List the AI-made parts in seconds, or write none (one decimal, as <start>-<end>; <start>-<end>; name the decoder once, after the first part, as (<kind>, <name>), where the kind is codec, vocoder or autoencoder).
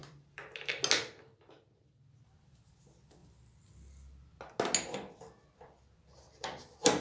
0.0-0.7 (vocoder, BigVGAN v2)